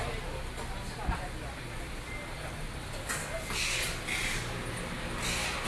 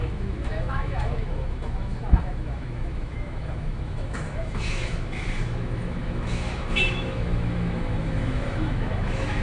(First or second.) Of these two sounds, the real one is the first